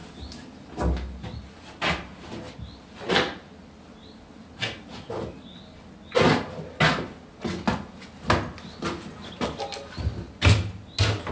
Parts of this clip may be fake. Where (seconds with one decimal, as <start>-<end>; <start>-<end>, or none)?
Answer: none